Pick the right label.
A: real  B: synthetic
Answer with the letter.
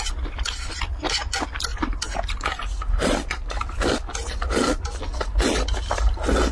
A